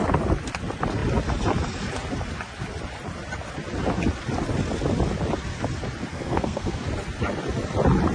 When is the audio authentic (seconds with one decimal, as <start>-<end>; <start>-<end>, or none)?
0.0-6.1; 6.8-8.1